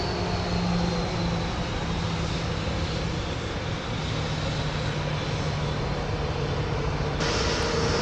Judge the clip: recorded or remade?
recorded